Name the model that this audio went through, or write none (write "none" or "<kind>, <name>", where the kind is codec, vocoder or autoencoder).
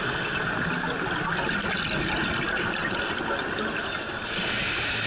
none